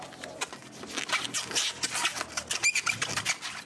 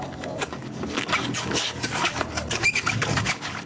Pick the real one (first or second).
first